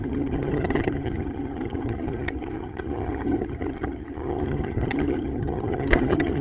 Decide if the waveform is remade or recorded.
remade